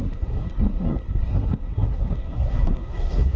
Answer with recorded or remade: remade